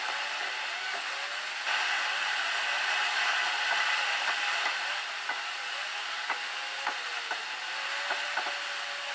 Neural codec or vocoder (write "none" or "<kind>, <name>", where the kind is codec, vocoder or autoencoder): none